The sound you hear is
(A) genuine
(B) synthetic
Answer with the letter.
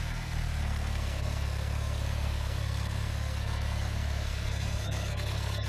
B